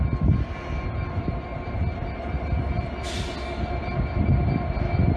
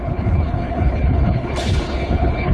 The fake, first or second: second